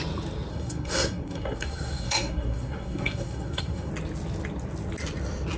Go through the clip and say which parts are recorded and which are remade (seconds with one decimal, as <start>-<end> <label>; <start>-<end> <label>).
0.0-0.5 recorded; 0.5-3.9 remade; 3.9-5.6 recorded